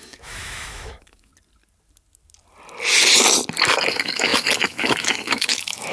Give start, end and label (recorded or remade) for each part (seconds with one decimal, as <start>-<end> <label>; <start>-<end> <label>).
0.0-1.3 remade; 1.3-3.9 recorded; 3.9-5.9 remade